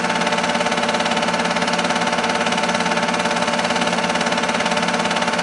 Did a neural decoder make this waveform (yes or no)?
no